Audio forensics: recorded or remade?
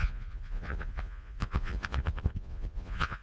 remade